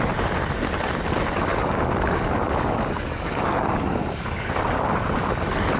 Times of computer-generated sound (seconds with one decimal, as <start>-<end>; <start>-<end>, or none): 1.5-4.5